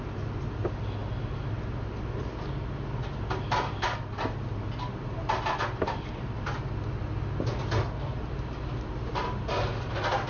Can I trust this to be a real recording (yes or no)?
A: yes